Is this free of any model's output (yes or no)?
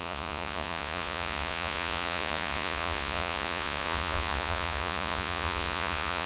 no